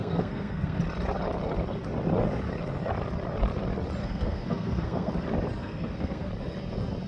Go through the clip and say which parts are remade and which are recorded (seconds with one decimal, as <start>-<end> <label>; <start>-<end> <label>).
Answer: 0.0-0.8 remade; 0.8-4.0 recorded; 4.0-5.1 remade; 5.1-5.6 recorded; 5.6-6.3 remade; 6.3-7.1 recorded